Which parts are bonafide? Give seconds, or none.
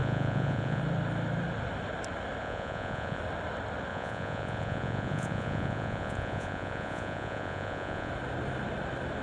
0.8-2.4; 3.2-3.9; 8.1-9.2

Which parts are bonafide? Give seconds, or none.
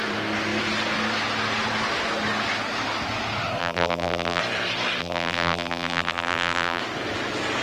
0.0-3.6; 4.4-5.0; 6.8-7.6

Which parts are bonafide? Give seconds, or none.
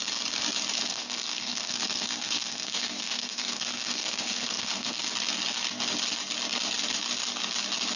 0.0-0.9; 5.0-8.0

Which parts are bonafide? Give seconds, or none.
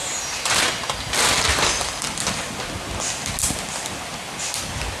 0.6-5.0